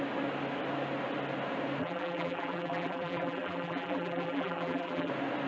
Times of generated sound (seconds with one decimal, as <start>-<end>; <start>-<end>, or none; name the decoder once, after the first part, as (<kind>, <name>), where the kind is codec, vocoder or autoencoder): 1.8-5.1 (vocoder, BigVGAN v2)